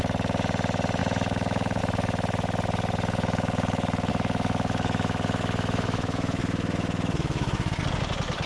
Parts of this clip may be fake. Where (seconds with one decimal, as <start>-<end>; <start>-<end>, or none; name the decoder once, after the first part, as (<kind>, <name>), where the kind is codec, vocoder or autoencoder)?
1.0-1.8 (autoencoder, DAC-VAE); 4.1-7.7